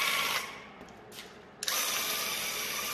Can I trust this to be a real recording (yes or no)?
yes